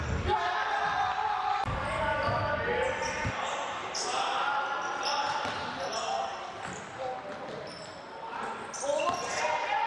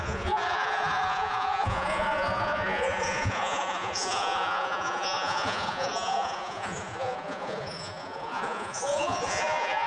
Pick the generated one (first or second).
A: second